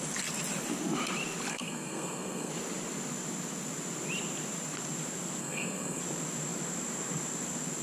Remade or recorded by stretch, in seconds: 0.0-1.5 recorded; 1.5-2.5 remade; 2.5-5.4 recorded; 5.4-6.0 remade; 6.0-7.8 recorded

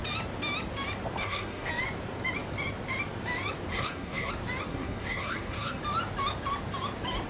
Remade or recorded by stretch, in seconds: 0.0-1.2 recorded; 1.2-1.7 remade; 1.7-3.7 recorded; 3.7-4.3 remade; 4.3-4.7 recorded; 4.7-5.8 remade; 5.8-7.3 recorded